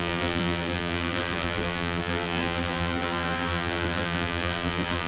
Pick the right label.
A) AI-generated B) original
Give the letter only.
A